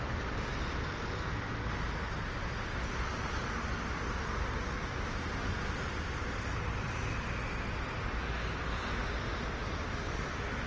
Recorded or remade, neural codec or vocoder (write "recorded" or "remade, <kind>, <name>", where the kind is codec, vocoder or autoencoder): recorded